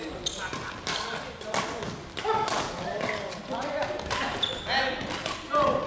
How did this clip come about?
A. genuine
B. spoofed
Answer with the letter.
A